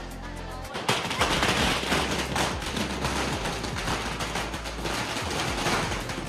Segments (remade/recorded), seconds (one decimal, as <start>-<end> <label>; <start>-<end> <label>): 0.0-6.3 recorded